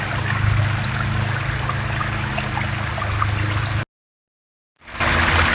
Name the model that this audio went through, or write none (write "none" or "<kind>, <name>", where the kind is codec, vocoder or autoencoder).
none